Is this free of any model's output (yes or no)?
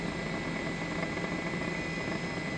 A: yes